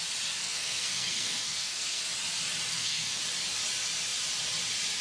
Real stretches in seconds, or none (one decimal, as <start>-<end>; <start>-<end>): 0.0-0.4; 2.0-2.7; 3.2-5.0

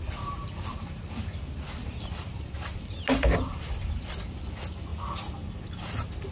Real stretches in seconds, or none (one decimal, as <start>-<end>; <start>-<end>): 0.0-6.3

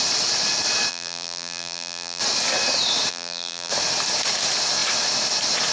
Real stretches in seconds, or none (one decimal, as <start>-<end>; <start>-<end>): 0.0-0.9; 2.2-3.1; 3.7-5.7

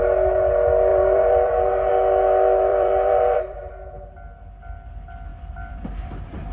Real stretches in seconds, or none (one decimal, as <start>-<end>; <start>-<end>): 0.0-0.9; 1.9-2.7; 3.7-5.3; 6.1-6.5

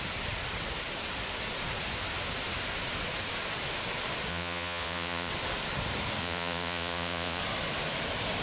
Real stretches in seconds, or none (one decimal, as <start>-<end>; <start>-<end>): 0.0-4.3; 5.3-6.2; 7.4-8.4

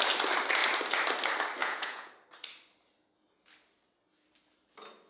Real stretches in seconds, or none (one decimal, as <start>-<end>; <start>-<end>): 0.0-1.6; 2.1-5.1